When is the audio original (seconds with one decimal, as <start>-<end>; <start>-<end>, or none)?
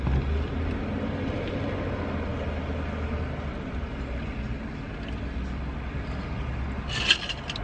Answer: 0.0-2.3; 3.2-7.6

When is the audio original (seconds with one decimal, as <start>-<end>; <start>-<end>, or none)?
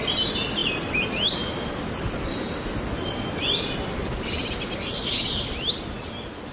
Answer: 0.0-6.5